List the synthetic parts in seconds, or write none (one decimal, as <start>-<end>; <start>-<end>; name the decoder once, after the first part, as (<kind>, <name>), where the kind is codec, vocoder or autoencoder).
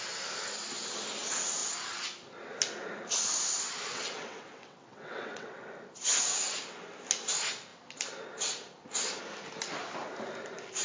3.9-5.7 (vocoder, WaveNeXt)